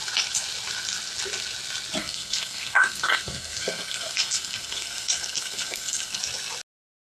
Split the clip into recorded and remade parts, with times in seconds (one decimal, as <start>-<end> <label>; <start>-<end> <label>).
0.0-2.0 recorded; 2.0-6.2 remade; 6.2-7.0 recorded